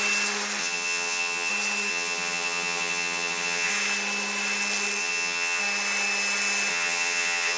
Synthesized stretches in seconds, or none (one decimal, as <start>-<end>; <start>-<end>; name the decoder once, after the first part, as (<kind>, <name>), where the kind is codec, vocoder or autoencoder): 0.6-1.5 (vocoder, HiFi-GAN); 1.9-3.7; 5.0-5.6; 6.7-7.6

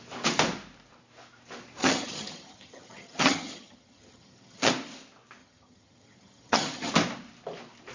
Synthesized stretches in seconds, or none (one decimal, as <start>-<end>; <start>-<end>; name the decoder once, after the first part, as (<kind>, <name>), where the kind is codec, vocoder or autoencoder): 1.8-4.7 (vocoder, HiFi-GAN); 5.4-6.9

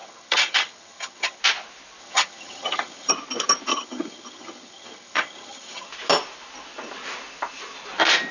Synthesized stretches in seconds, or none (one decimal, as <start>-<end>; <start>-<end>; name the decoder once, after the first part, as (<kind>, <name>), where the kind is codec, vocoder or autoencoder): 0.0-1.4 (vocoder, HiFi-GAN); 2.0-3.1; 3.7-5.9